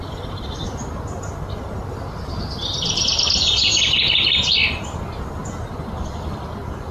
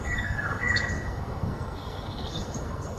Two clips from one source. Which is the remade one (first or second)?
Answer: second